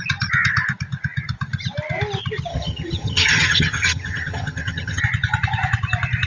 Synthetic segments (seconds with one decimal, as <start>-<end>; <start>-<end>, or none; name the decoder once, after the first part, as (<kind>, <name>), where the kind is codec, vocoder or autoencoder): 2.5-5.0 (vocoder, HiFi-GAN)